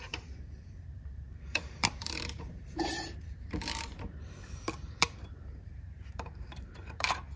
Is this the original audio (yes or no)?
no